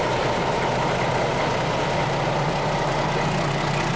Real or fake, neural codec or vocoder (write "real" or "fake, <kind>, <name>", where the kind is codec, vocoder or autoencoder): real